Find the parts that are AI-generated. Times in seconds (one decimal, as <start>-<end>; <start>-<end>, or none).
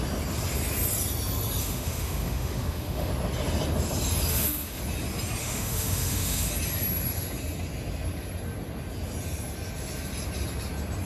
1.6-3.1; 4.3-4.8; 5.4-6.5